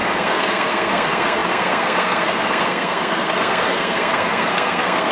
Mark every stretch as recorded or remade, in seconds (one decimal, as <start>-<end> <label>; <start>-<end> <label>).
0.0-5.1 remade